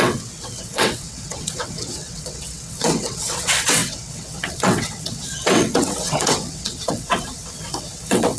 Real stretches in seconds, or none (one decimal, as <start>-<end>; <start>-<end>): none